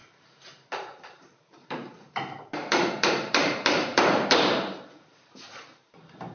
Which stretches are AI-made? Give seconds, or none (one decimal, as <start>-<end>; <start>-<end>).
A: 0.0-6.3